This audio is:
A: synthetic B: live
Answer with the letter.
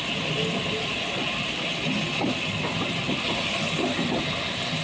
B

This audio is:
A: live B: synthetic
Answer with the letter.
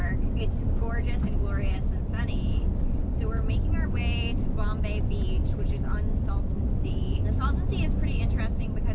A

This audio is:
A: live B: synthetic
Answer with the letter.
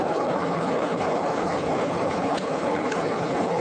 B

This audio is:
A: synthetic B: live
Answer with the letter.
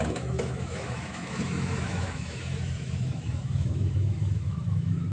A